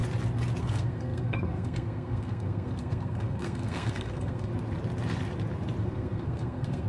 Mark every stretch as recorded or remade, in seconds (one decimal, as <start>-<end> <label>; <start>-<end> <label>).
0.0-0.6 recorded; 0.6-4.5 remade; 4.5-5.8 recorded; 5.8-6.9 remade